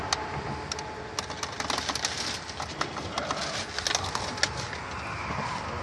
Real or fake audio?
real